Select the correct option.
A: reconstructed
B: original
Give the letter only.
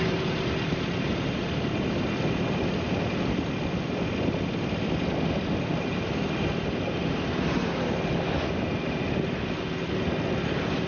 B